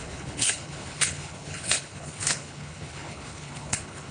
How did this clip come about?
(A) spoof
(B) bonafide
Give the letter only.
A